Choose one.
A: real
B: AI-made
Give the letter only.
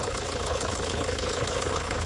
B